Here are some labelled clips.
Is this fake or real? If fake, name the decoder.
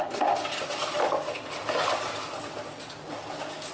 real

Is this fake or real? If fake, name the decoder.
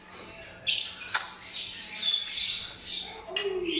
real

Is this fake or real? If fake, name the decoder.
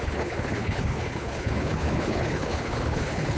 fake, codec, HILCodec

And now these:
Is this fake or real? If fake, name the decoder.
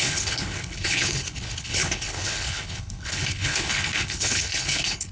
fake, codec, HILCodec